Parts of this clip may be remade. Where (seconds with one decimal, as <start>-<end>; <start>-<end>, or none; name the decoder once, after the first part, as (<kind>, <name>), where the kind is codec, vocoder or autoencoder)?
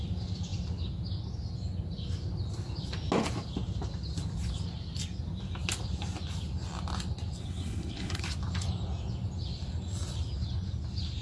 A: 7.4-8.2 (codec, HILCodec)